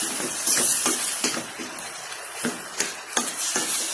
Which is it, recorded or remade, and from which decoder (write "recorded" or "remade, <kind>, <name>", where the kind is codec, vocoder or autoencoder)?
recorded